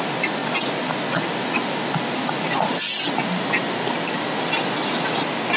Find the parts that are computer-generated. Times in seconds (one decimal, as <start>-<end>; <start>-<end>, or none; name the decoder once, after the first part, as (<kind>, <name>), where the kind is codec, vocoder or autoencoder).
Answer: none